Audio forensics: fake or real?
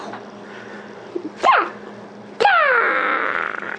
real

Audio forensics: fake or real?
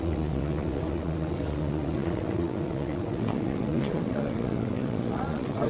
fake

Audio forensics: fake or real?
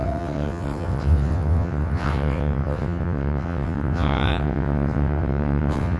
fake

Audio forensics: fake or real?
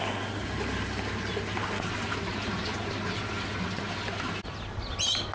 real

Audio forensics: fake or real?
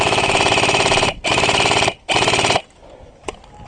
real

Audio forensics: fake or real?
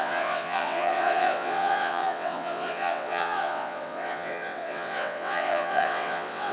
fake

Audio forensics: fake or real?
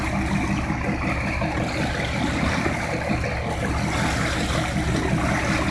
real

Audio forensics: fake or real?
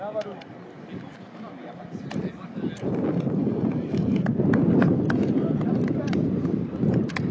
real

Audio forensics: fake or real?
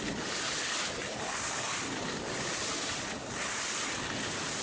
real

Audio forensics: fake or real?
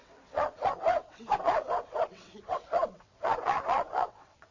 fake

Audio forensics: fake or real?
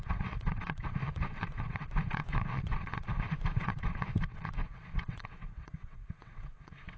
fake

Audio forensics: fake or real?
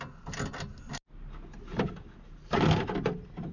real